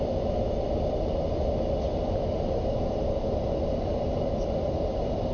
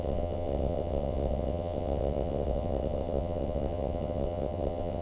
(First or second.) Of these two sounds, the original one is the first